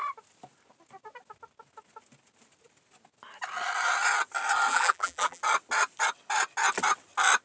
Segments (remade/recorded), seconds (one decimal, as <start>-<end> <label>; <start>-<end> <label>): 0.0-4.7 recorded; 4.7-5.4 remade; 5.4-7.4 recorded